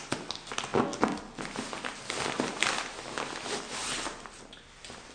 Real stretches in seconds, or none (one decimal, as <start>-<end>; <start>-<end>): 0.0-5.1